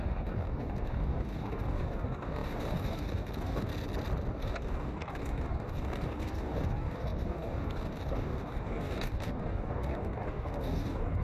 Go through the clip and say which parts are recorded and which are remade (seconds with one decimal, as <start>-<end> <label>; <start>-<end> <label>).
0.0-3.7 remade; 3.7-4.3 recorded; 4.3-11.2 remade